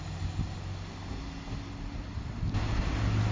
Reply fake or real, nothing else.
real